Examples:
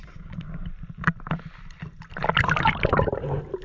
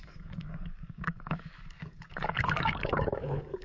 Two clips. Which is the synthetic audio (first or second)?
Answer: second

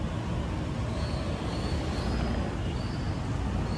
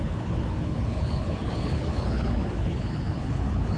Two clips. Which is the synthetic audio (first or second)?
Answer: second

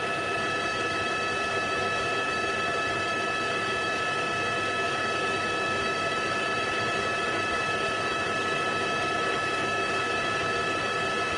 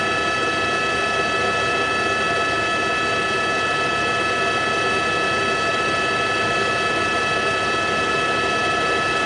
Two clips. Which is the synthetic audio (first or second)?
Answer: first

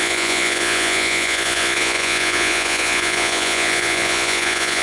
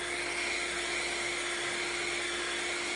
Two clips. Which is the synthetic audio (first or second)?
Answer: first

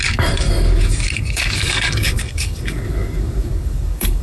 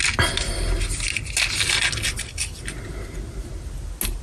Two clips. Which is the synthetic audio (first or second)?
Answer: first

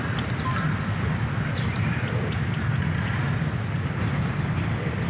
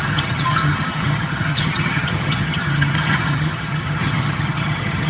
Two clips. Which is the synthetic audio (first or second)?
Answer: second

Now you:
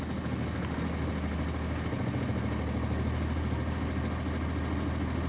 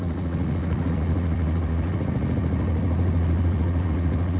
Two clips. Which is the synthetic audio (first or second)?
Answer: second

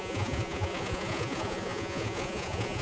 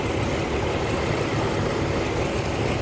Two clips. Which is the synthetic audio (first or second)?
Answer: first